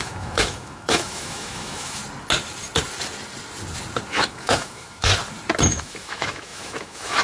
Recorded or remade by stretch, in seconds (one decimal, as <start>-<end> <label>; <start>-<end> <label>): 0.0-2.0 remade; 2.0-4.1 recorded; 4.1-5.1 remade; 5.1-5.6 recorded; 5.6-7.2 remade